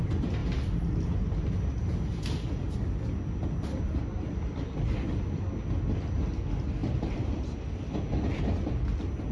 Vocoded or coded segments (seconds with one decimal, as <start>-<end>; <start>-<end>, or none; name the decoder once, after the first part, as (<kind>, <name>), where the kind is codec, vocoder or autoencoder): none